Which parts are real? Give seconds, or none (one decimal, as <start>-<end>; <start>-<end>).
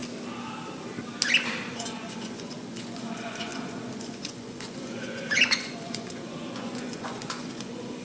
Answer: 0.0-1.7